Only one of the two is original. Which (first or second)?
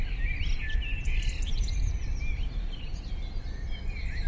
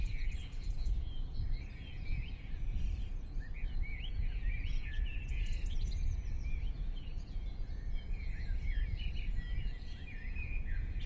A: first